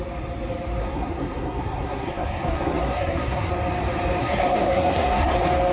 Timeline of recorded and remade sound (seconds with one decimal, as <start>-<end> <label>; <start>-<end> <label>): 0.0-0.8 recorded; 0.8-3.5 remade; 3.5-4.2 recorded; 4.2-5.3 remade; 5.3-5.7 recorded